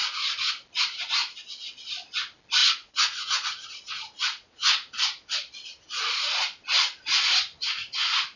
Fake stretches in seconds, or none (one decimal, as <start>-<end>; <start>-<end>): 0.0-0.5; 1.2-1.7; 2.6-6.4